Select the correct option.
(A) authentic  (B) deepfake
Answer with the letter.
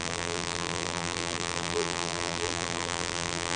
B